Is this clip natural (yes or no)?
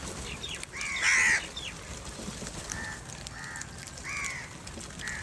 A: yes